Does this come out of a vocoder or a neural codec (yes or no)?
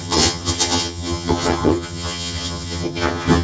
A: yes